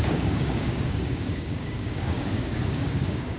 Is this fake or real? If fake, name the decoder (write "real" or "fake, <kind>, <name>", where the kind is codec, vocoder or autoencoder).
fake, codec, DAC